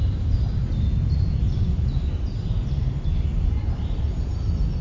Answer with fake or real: real